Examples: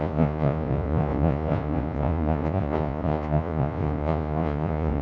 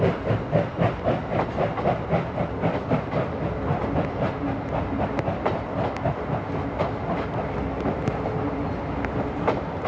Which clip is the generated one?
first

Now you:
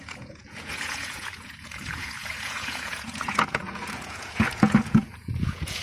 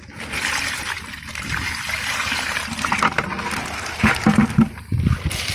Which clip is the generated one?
first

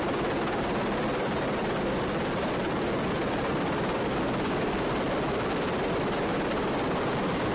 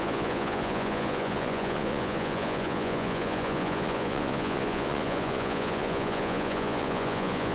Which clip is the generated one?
second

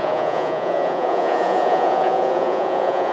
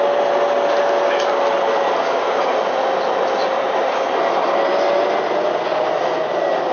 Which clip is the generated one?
first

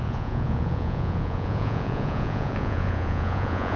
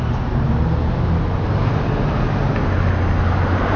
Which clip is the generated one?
first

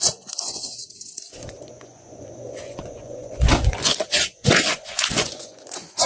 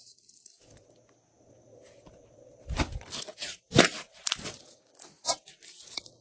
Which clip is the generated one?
first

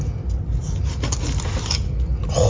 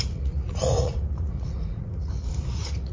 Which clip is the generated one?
second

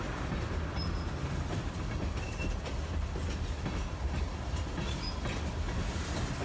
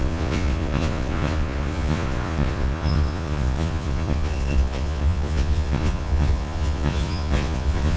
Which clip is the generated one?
second